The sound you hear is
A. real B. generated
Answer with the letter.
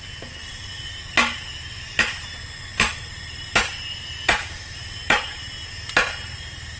A